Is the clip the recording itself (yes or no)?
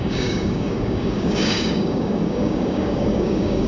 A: no